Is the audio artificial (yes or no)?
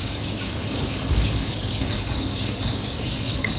yes